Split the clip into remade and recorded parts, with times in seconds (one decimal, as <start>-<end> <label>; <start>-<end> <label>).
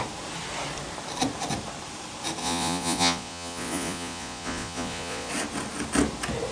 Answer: 0.0-2.4 recorded; 2.4-5.3 remade; 5.3-6.5 recorded